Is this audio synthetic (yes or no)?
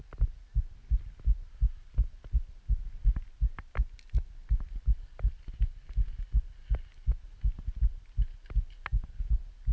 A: no